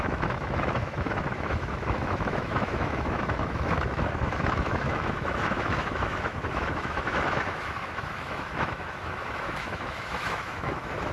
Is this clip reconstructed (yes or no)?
yes